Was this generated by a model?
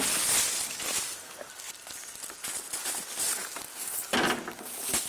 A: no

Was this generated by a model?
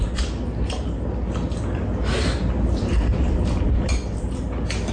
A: no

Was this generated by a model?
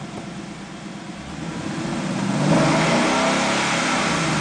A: no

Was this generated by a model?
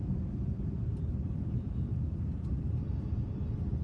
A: no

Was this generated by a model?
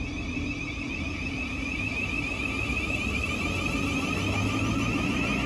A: no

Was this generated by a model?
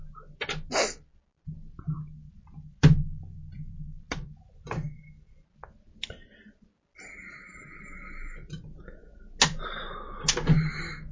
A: no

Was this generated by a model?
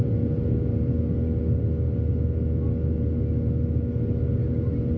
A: no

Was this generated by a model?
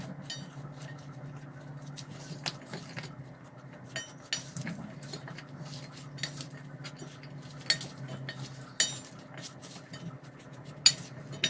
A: no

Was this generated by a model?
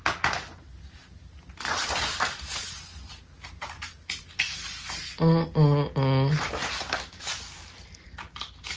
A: no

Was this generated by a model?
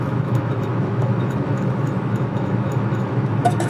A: yes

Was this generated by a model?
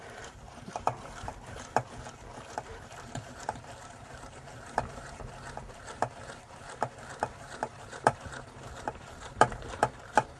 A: yes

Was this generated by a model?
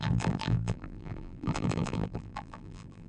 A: yes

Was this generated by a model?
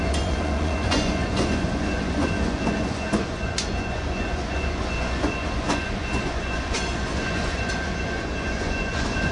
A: yes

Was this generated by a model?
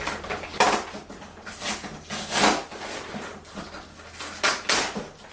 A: no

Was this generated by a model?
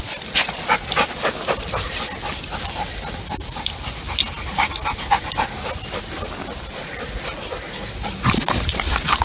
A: no